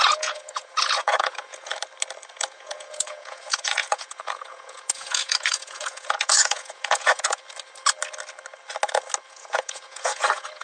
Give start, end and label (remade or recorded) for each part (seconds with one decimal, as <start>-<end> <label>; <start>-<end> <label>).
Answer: 0.0-1.7 remade; 1.7-2.3 recorded; 2.3-7.4 remade; 7.4-9.3 recorded; 9.3-10.6 remade